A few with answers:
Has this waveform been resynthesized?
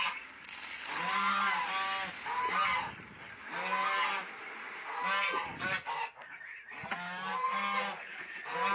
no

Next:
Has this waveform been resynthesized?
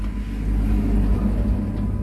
no